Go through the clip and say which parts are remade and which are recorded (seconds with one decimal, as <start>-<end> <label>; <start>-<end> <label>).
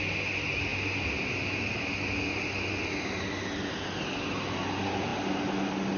0.0-6.0 recorded